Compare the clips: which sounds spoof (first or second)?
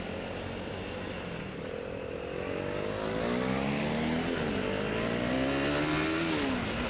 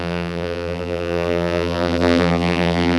second